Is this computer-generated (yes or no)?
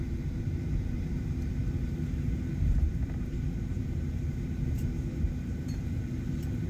yes